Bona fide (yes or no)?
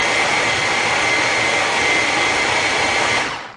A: yes